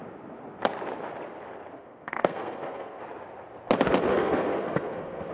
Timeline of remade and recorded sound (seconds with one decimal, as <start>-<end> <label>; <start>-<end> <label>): 0.0-1.8 recorded; 1.8-3.0 remade; 3.0-4.1 recorded; 4.1-5.3 remade